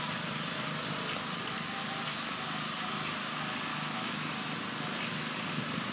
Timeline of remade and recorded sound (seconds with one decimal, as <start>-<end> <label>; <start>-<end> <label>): 0.0-3.7 recorded; 3.7-4.3 remade; 4.3-5.9 recorded